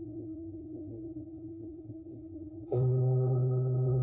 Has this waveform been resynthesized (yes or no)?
yes